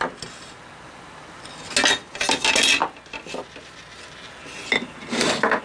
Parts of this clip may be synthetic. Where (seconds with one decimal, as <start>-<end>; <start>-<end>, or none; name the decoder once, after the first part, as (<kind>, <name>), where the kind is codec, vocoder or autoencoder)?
none